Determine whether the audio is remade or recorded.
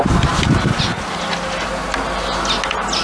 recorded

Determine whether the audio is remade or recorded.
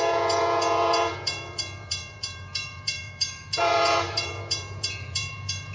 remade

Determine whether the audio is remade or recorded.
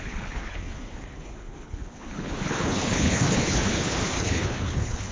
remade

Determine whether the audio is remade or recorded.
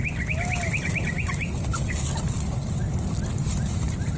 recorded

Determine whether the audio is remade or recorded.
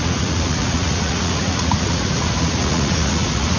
remade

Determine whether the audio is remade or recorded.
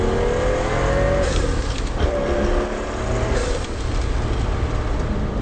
recorded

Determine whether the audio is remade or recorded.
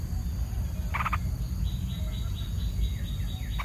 recorded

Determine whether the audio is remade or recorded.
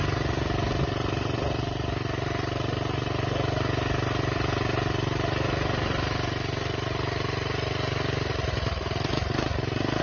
recorded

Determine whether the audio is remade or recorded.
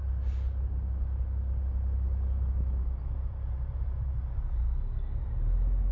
recorded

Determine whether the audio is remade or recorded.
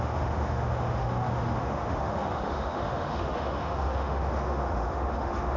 remade